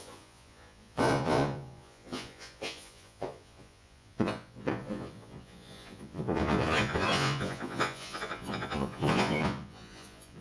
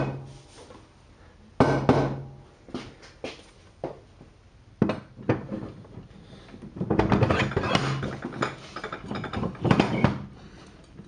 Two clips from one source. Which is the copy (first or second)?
first